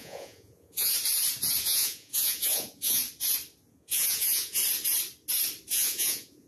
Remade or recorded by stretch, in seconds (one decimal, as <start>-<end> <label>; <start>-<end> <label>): 0.0-0.9 remade; 0.9-1.6 recorded; 1.6-3.0 remade; 3.0-3.7 recorded; 3.7-4.6 remade; 4.6-5.7 recorded; 5.7-6.5 remade